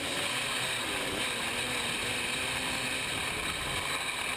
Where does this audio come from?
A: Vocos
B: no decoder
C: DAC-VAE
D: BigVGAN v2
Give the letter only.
B